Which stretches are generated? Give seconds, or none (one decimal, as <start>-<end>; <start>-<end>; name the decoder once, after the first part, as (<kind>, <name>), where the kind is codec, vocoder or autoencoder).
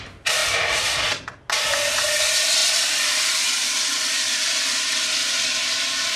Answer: 0.4-1.0 (vocoder, BigVGAN v2); 2.6-5.6